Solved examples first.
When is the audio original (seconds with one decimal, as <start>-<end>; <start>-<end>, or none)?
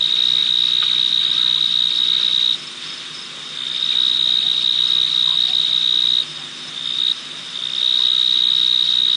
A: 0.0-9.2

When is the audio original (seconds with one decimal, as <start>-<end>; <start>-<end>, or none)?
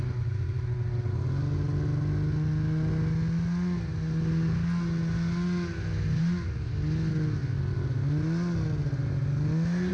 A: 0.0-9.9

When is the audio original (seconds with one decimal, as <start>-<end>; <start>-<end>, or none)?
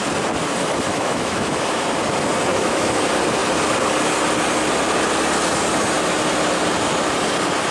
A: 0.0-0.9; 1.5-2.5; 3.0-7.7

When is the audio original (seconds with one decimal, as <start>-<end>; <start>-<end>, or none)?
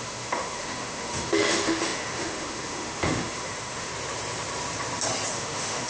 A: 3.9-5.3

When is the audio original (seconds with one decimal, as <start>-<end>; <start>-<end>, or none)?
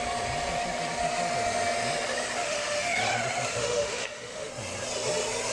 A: 0.0-2.4; 3.0-3.5; 4.5-5.5